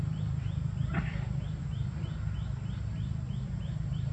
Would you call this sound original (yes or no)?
yes